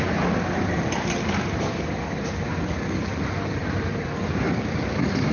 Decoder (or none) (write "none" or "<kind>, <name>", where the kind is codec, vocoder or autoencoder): none